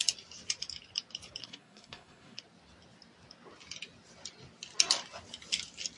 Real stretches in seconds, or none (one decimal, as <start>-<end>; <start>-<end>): 0.0-1.4; 2.4-6.0